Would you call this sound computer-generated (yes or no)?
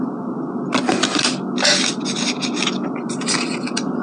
no